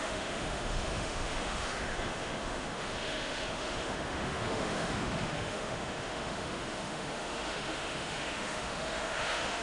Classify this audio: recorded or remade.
remade